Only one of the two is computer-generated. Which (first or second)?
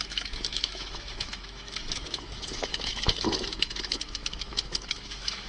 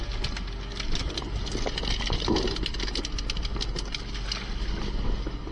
first